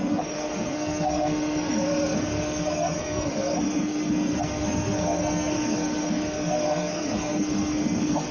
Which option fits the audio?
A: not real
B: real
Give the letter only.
A